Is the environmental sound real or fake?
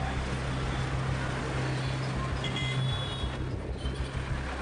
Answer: real